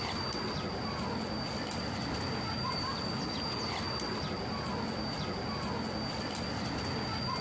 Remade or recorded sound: recorded